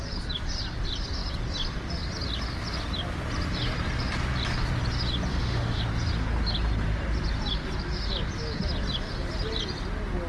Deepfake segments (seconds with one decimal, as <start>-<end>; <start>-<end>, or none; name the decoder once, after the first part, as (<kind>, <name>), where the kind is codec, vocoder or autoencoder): 5.3-5.8 (autoencoder, DAC-VAE)